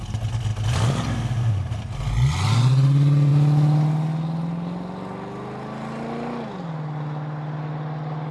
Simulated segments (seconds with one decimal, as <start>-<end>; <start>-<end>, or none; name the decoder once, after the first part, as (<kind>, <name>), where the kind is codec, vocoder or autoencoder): none